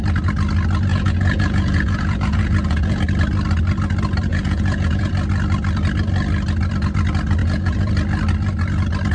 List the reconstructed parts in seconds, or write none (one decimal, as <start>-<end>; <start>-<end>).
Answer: 0.9-3.0; 4.3-5.1; 7.4-7.9